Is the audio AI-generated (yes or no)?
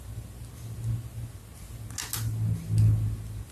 no